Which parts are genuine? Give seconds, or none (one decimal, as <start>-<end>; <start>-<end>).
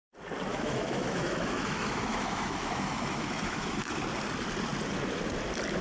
0.0-0.5; 4.0-5.8